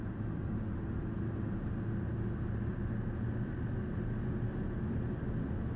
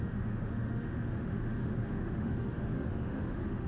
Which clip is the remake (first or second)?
second